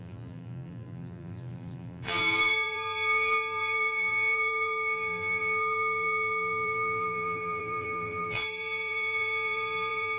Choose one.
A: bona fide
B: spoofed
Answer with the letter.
B